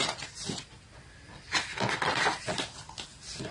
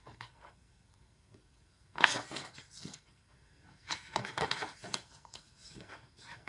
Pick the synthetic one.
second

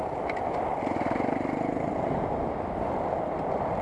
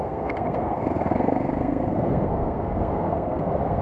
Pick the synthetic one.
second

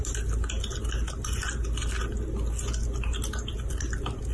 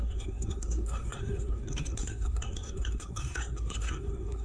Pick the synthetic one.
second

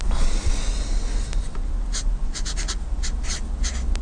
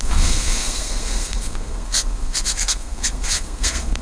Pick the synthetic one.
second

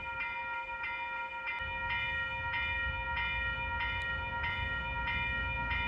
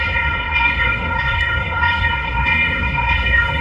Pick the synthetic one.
second